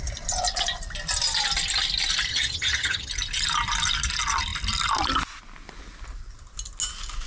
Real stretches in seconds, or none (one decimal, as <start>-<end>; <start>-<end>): 0.0-2.3; 3.1-7.3